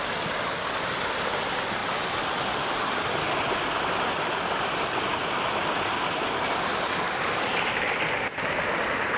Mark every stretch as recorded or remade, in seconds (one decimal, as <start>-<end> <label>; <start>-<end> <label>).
0.0-9.2 recorded